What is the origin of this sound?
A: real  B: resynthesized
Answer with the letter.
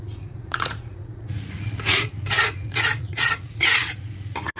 B